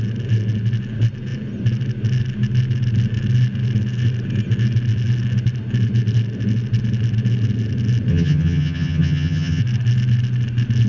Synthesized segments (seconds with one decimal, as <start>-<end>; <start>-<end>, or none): 8.1-9.6